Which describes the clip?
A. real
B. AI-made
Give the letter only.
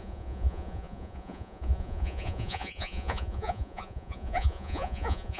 B